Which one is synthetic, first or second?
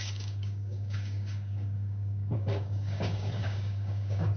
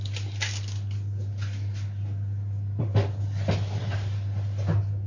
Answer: first